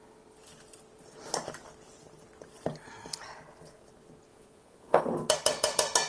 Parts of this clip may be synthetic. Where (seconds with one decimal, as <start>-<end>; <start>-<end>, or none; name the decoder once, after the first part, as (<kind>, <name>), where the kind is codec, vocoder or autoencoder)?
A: 4.3-5.0 (vocoder, Vocos)